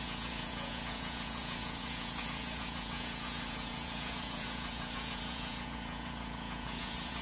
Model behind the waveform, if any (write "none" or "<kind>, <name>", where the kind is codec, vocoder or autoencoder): vocoder, Vocos